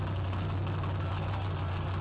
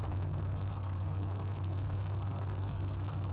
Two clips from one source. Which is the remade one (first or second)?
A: second